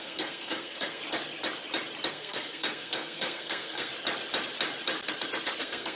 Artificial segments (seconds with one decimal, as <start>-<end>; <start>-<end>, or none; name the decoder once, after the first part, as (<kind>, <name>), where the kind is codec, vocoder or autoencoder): 0.0-1.0 (codec, SNAC); 2.1-3.9; 5.6-6.0